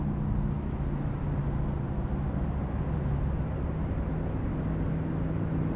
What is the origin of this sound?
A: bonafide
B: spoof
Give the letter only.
A